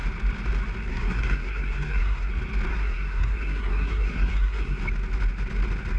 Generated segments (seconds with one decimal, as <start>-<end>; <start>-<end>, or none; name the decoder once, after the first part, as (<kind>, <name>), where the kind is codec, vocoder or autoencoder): 0.9-2.3 (codec, SNAC); 2.7-4.8